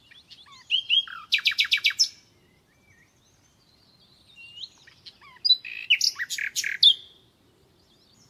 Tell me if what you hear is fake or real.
real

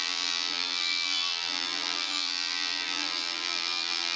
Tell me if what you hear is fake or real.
fake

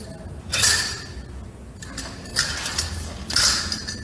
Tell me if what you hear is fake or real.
real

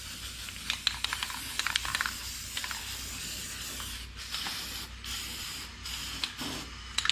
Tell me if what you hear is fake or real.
real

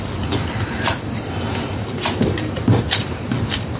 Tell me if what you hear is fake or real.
fake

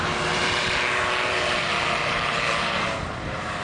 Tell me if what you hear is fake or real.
fake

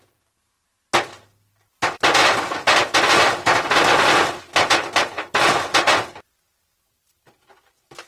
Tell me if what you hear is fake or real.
real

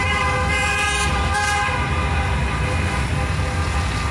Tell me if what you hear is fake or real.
real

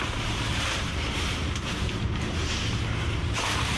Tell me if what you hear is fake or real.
fake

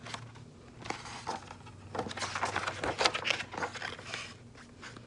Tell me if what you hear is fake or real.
real